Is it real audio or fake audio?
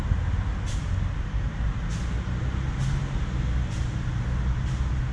real